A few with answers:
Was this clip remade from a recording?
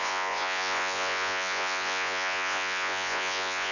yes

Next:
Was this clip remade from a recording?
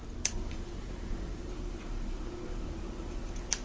no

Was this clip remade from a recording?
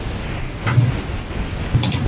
no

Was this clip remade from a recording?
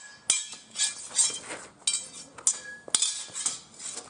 no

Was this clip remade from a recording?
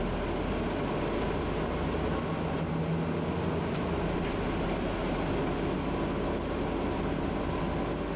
no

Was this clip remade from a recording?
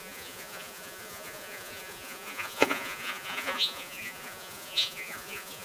yes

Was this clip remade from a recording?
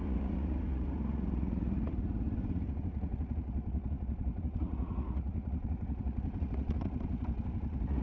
yes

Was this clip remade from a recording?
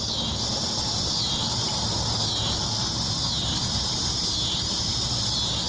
no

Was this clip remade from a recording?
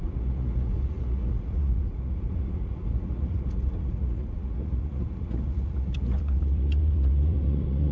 yes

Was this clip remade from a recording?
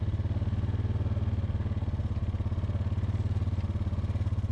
no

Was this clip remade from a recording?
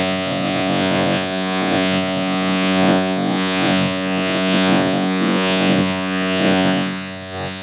yes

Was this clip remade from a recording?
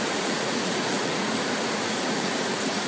yes